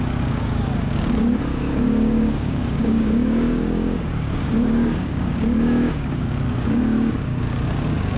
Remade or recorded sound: remade